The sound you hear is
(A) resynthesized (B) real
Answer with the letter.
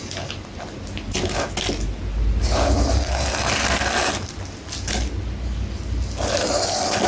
B